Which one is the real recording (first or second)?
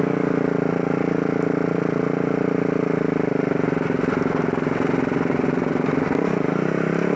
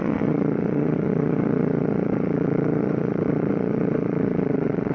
first